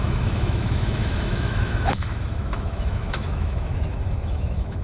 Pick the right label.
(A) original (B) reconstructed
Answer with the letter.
B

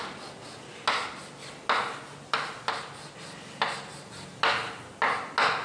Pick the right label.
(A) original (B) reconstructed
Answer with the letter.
A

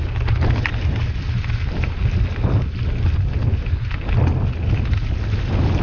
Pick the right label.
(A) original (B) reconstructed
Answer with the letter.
A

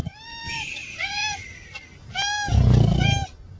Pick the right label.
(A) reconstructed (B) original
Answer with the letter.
B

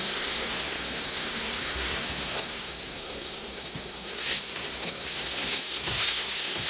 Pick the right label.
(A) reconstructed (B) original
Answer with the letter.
A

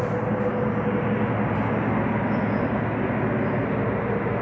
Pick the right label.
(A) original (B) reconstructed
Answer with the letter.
A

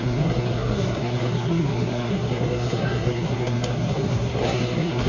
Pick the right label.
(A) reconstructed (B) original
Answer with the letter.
A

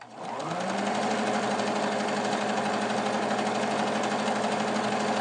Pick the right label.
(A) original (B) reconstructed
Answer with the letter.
A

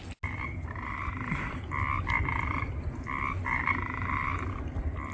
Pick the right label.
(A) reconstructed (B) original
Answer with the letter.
B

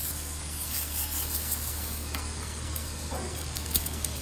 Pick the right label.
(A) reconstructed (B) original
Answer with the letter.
A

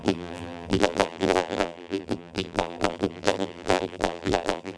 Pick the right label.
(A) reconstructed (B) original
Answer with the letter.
A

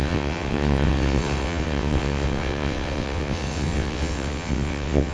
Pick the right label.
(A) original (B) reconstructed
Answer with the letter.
B